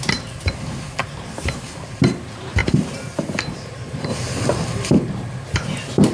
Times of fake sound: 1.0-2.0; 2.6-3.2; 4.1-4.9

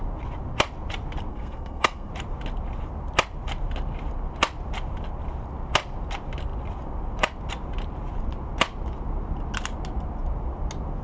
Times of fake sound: 1.3-2.1

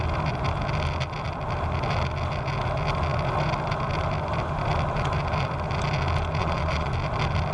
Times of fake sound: 6.4-6.9

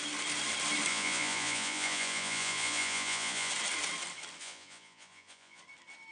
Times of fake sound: 0.9-3.5; 4.4-5.6